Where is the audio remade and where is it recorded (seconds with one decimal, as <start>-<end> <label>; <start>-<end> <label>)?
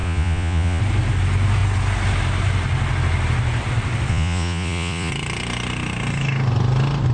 0.0-0.8 remade; 0.8-4.1 recorded; 4.1-5.1 remade; 5.1-7.1 recorded